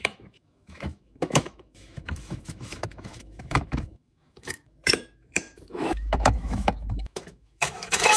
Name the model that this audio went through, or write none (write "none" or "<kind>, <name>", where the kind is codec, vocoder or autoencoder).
autoencoder, DAC-VAE